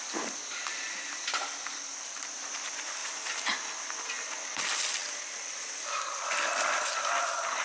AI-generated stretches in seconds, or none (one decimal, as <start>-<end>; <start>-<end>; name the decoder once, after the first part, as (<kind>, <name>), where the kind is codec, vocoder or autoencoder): none